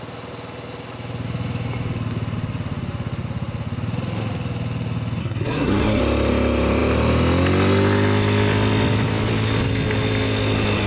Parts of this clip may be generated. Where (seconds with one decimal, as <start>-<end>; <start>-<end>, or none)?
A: 5.2-6.0